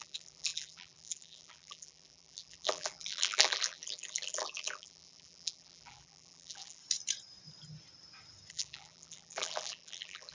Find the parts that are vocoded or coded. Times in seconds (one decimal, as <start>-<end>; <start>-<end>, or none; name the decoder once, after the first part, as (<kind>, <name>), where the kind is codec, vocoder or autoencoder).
0.0-6.8 (vocoder, BigVGAN v2); 8.5-10.3